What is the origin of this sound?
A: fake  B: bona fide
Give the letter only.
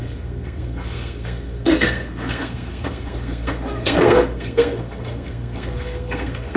A